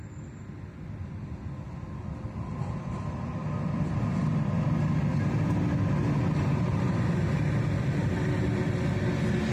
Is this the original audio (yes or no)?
yes